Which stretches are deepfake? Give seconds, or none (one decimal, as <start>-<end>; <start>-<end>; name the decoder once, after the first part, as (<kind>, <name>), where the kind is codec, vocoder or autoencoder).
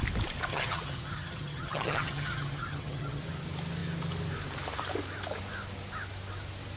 0.5-3.2 (vocoder, HiFi-GAN)